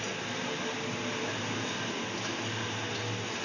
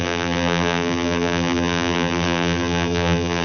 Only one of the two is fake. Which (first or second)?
second